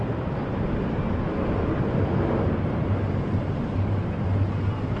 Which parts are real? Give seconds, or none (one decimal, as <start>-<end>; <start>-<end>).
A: 0.0-5.0

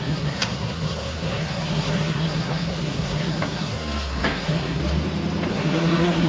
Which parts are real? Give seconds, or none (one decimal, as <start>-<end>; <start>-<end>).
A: 4.8-5.5

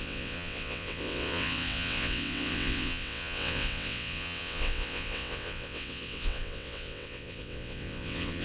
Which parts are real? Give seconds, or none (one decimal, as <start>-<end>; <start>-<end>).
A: none